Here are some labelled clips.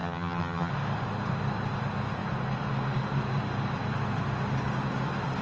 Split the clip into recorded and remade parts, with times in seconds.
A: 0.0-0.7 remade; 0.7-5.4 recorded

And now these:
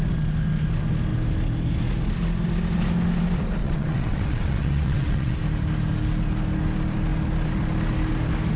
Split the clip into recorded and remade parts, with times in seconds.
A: 0.0-3.6 recorded; 3.6-5.4 remade; 5.4-8.6 recorded